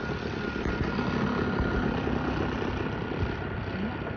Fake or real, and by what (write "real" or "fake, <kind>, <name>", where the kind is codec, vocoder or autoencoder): real